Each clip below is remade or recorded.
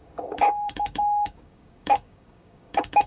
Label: remade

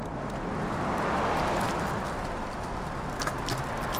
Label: recorded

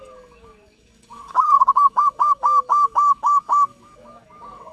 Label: remade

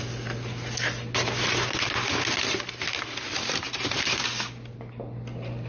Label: recorded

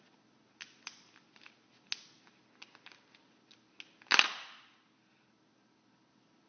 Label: recorded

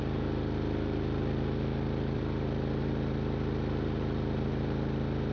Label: recorded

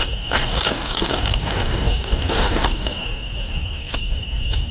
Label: remade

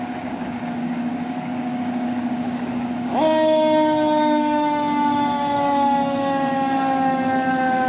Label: remade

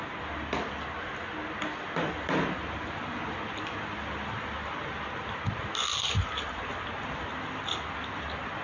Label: recorded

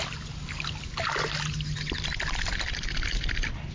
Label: recorded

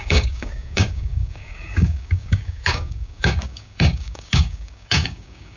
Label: remade